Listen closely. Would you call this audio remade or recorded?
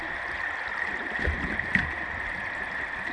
remade